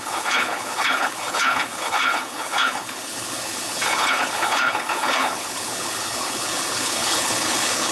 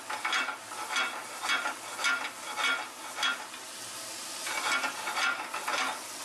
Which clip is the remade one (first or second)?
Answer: first